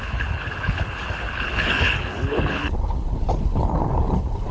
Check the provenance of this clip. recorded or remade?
remade